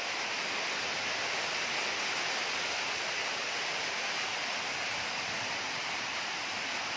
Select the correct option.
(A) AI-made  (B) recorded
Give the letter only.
B